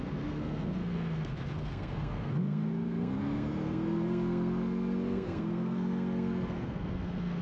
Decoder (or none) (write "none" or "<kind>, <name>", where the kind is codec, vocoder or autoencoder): codec, SNAC